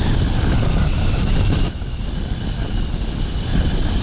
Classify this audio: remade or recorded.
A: recorded